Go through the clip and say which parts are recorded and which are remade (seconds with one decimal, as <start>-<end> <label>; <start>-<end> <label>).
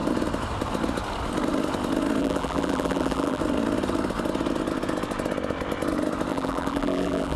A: 0.0-2.2 recorded; 2.2-3.4 remade; 3.4-6.3 recorded; 6.3-7.4 remade